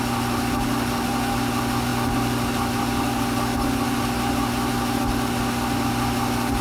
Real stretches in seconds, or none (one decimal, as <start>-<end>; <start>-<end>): 0.0-6.6